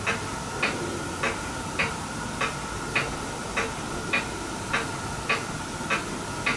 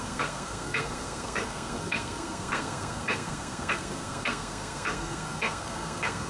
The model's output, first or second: second